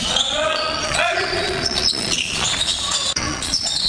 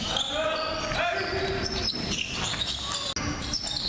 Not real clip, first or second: first